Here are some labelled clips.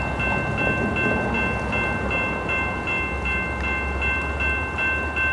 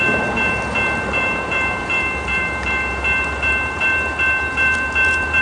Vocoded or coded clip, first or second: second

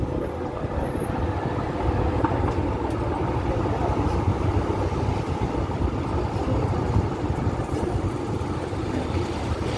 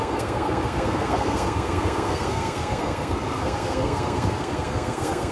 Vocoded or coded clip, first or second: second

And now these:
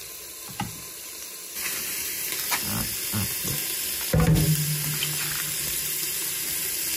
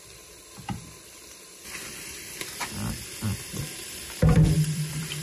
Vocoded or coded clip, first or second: second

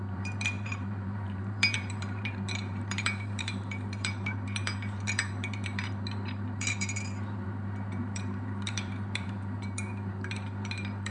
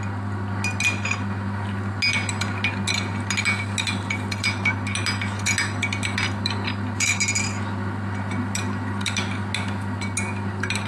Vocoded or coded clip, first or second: first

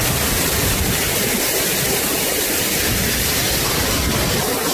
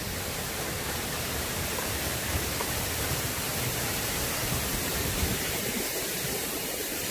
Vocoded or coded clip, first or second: second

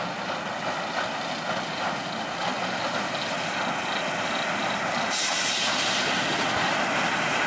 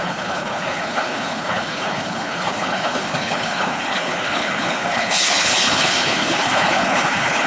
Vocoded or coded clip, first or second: second